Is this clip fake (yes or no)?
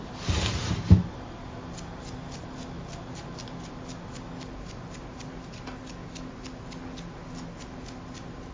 no